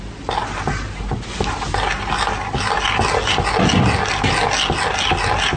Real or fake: real